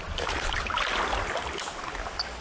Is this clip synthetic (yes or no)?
no